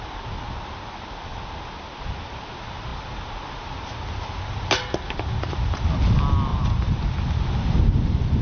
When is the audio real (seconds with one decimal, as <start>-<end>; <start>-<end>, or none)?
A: 0.0-6.5; 7.0-8.4

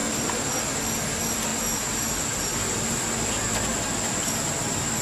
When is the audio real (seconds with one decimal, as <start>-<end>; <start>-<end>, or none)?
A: 0.0-5.0

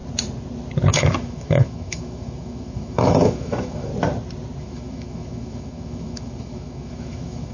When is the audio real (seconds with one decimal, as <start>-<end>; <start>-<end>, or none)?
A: 0.0-0.9; 3.9-4.6

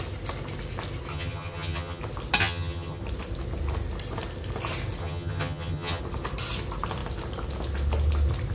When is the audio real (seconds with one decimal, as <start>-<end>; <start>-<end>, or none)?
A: 0.0-1.1; 2.0-2.4; 3.0-5.0; 6.0-8.5

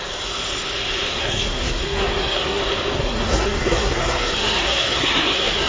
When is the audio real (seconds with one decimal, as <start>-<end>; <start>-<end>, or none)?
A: 0.0-1.2; 2.6-3.0

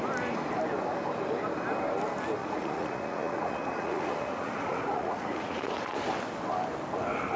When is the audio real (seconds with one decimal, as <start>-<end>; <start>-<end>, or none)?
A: 0.0-2.4; 5.9-7.4

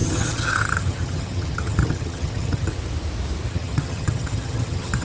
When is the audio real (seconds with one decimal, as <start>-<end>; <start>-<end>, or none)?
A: 2.7-3.5

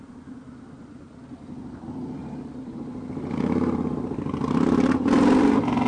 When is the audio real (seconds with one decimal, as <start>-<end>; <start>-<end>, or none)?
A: 0.0-2.2